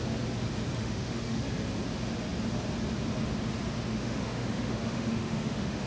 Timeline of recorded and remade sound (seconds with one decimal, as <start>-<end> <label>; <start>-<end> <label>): 0.0-0.8 recorded; 0.8-1.4 remade; 1.4-3.9 recorded; 3.9-5.9 remade